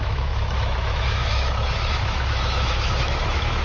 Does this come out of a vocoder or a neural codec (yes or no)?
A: yes